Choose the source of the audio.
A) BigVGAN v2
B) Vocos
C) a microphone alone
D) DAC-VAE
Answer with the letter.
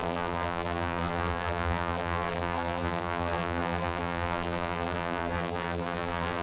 A